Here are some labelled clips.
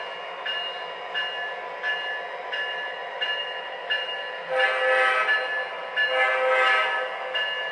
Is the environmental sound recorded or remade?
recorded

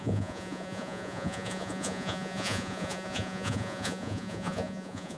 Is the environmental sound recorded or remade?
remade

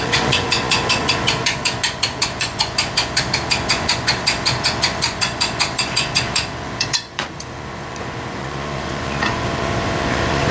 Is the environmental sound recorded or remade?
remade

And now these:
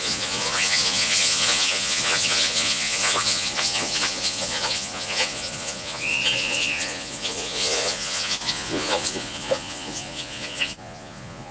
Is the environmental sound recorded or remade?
remade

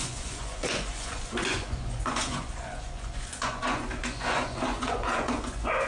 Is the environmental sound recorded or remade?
remade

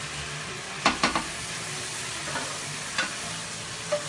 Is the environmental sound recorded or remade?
recorded